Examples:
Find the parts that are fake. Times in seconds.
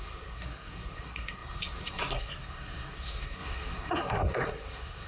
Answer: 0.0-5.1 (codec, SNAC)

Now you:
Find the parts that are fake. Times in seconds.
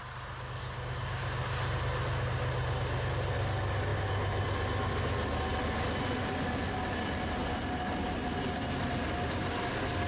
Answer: none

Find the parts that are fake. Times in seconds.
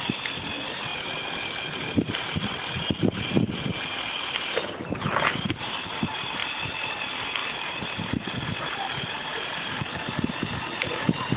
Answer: 6.4-7.0 (vocoder, BigVGAN v2); 7.4-8.3; 9.3-10.4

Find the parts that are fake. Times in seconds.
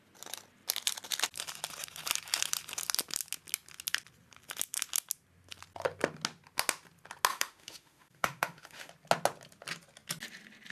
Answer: 7.3-8.9 (autoencoder, DAC-VAE)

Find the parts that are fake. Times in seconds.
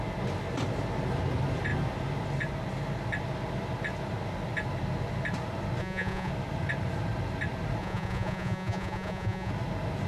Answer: 5.8-6.3 (vocoder, Vocos); 7.8-9.5